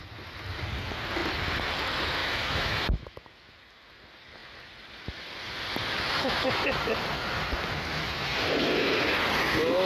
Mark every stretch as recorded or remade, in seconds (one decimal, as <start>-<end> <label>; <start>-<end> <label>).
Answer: 0.0-2.2 recorded; 2.2-3.2 remade; 3.2-9.9 recorded